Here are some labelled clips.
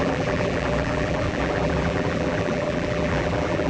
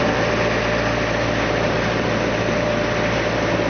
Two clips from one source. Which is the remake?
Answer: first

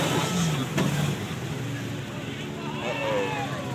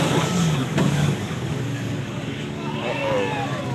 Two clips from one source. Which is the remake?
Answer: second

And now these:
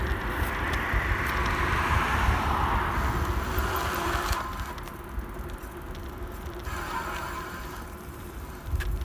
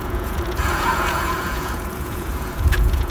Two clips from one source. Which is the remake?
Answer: second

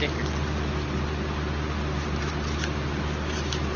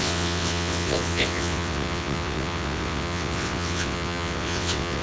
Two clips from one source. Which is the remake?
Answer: second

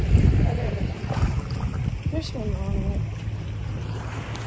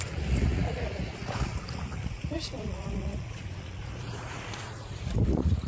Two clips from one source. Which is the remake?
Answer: second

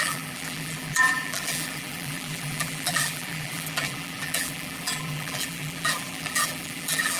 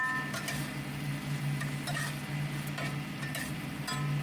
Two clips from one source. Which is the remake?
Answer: first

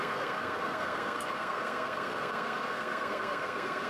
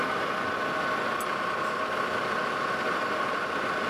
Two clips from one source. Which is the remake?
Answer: first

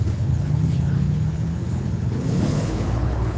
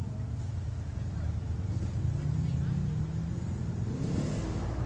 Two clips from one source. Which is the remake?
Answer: first